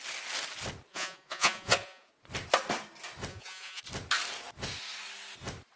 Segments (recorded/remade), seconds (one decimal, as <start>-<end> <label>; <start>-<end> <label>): 0.0-0.9 recorded; 0.9-2.1 remade; 2.1-3.3 recorded; 3.3-3.8 remade; 3.8-5.8 recorded